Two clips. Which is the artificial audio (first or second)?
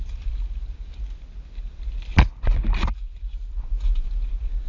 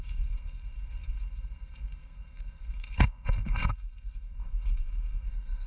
second